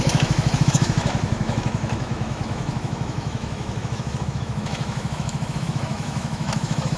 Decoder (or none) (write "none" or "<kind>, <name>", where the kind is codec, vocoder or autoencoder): autoencoder, DAC-VAE